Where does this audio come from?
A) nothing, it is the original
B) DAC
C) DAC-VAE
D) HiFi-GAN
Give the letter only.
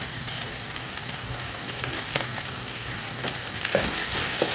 B